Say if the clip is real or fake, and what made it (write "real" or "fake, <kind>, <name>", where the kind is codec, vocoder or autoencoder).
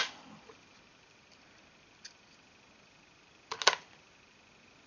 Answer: real